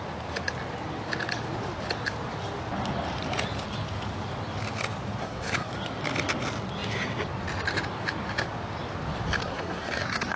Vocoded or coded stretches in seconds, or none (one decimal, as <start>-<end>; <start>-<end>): 5.2-5.7; 9.4-10.4